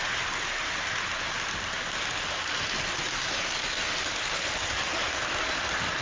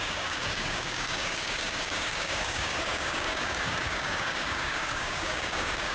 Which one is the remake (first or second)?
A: second